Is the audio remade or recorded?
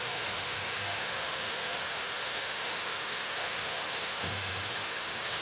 remade